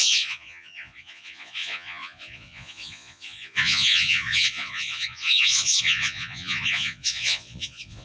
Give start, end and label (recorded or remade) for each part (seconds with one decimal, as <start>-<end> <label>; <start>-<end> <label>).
0.0-8.0 remade